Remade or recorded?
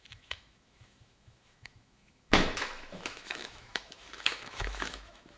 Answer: remade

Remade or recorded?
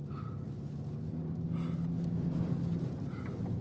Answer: recorded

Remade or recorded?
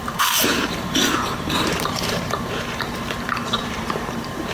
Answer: remade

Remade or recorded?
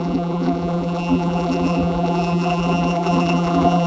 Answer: remade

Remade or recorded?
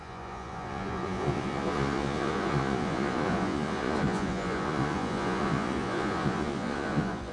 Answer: remade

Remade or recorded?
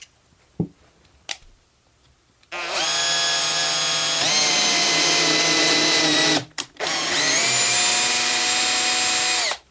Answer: recorded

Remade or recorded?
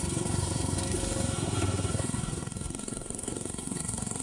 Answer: remade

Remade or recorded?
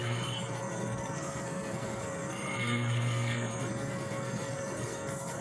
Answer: remade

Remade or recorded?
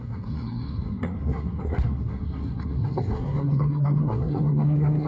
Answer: remade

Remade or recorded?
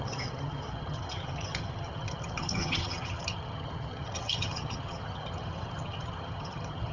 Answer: remade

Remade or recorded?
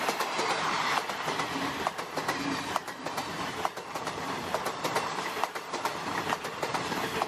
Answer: remade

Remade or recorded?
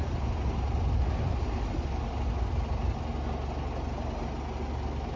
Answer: recorded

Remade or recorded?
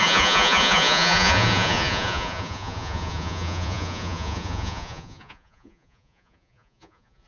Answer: remade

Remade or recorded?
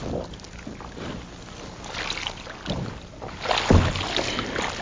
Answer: recorded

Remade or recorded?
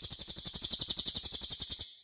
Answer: remade